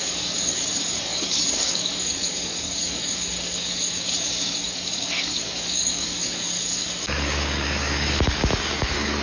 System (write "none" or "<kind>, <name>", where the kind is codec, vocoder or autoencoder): codec, DAC